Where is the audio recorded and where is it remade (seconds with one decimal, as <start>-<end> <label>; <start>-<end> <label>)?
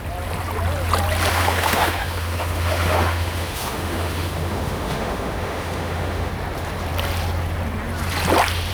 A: 0.0-1.3 recorded; 1.3-6.3 remade; 6.3-8.7 recorded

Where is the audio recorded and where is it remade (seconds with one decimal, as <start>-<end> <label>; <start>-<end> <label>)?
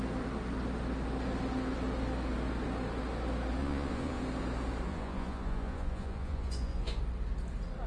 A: 0.0-3.6 recorded; 3.6-4.2 remade; 4.2-4.9 recorded; 4.9-7.0 remade; 7.0-7.9 recorded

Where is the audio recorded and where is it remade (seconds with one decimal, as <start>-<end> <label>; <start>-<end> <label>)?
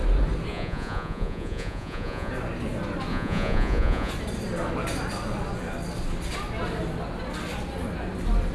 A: 0.0-0.5 recorded; 0.5-2.3 remade; 2.3-3.1 recorded; 3.1-4.1 remade; 4.1-8.5 recorded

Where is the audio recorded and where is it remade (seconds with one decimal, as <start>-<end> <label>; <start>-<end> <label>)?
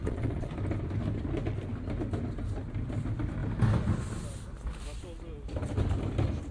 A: 0.0-0.5 remade; 0.5-6.5 recorded